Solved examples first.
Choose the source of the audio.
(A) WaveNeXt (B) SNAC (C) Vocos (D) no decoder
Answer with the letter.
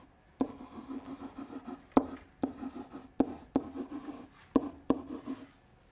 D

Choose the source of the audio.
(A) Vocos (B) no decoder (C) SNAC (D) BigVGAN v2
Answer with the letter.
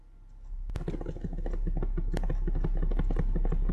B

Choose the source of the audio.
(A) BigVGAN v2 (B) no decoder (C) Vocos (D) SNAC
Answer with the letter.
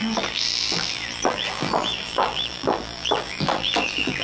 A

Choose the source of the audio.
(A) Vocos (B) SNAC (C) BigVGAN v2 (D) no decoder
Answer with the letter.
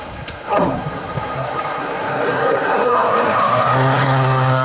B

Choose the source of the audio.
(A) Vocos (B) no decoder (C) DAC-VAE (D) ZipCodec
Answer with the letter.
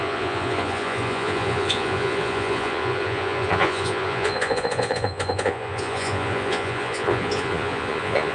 A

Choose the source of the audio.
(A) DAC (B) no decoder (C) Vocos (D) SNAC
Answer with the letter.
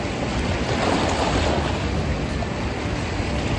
B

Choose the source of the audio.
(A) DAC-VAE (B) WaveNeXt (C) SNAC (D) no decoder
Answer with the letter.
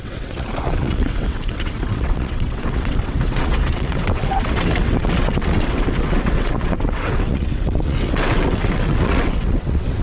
B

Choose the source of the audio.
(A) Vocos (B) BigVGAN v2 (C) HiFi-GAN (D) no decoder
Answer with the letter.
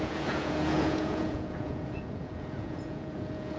A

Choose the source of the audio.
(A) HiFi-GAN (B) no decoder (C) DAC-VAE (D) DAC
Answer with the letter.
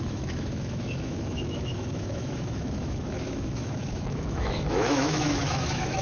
C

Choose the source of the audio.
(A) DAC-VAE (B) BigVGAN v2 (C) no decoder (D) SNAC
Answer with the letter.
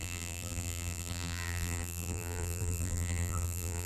B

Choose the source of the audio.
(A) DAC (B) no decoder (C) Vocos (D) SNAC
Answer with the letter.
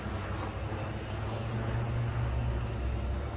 B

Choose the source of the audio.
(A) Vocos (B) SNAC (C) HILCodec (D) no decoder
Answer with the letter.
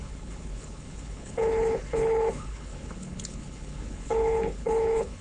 C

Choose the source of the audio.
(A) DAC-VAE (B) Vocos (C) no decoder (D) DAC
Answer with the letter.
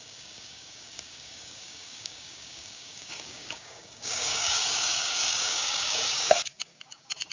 D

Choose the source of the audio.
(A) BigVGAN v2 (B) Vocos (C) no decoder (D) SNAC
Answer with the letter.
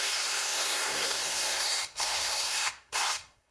D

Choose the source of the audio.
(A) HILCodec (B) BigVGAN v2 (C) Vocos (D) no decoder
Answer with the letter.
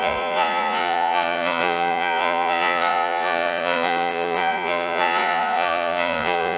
C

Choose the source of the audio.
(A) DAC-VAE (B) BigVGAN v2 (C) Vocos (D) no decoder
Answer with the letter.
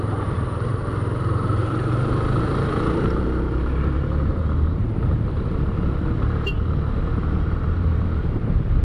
B